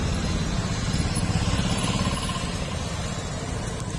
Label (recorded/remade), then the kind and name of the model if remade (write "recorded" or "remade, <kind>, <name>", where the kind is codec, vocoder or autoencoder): recorded